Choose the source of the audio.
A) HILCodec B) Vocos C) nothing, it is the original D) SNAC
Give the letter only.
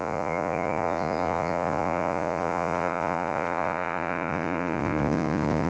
B